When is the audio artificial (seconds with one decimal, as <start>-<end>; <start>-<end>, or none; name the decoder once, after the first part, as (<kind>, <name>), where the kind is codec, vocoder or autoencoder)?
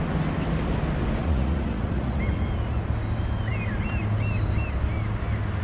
1.2-2.2 (vocoder, Vocos)